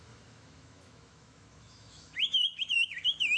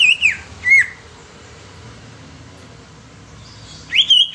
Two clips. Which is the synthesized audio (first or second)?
first